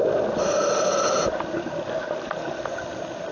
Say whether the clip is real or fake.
real